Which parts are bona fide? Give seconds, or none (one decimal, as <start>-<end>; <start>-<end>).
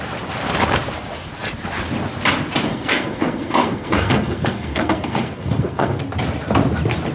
0.0-2.7; 6.0-7.1